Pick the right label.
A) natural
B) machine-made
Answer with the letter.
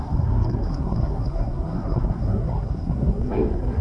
B